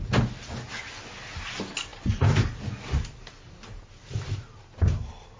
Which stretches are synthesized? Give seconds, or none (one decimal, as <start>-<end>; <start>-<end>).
none